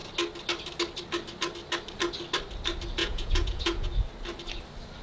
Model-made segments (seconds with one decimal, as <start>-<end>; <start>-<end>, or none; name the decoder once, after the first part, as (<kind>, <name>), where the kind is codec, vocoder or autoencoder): 3.0-3.9 (vocoder, Vocos)